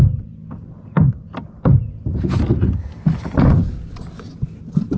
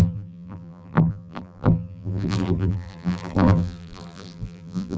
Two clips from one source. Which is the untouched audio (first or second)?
first